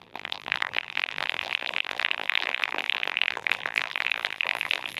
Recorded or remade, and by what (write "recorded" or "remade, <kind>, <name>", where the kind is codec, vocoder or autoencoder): remade, vocoder, BigVGAN v2